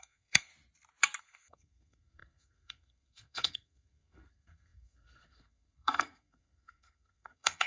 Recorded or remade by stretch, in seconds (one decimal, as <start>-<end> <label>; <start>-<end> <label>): 0.0-0.5 remade; 0.5-1.2 recorded; 1.2-7.7 remade